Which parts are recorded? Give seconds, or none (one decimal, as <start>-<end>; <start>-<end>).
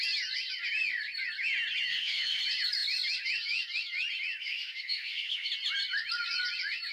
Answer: 0.0-1.9; 2.4-4.4; 5.5-6.9